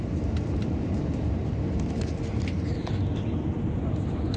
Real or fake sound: fake